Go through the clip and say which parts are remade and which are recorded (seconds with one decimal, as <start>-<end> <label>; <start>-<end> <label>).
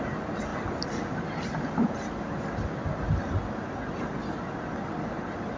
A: 0.0-5.6 recorded